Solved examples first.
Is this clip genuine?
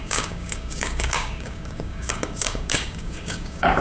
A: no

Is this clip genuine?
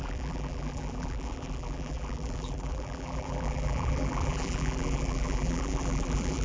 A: no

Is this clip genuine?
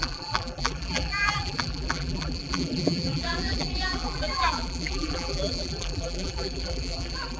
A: no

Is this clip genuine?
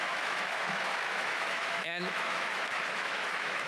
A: no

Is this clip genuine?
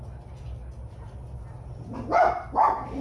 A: yes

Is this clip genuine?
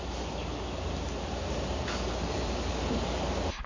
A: yes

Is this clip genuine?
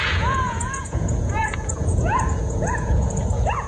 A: no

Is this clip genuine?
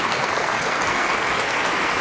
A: no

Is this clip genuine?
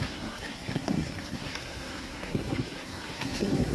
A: no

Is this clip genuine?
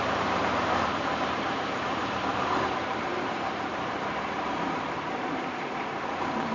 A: no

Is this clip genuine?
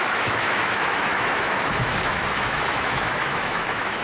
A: no